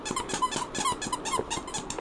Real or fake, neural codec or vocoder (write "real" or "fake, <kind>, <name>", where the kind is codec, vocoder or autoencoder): real